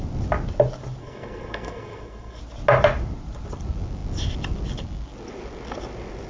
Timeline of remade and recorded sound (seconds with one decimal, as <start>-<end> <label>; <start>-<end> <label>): 0.0-1.0 recorded; 1.0-2.4 remade; 2.4-6.3 recorded